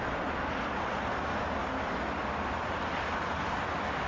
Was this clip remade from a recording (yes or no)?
no